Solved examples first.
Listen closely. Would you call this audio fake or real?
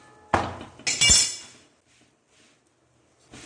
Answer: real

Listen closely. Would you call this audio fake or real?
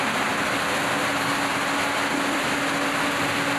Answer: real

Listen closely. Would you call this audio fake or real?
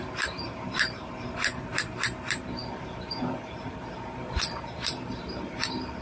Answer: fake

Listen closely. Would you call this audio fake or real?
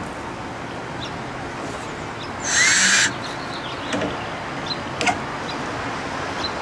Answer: real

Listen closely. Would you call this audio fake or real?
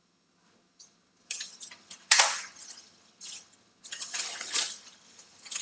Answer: fake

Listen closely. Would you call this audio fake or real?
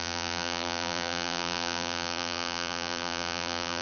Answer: fake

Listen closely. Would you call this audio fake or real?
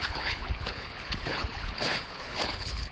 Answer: fake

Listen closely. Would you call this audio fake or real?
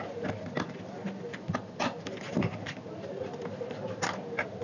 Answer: real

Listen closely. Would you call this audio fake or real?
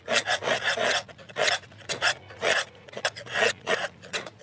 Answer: fake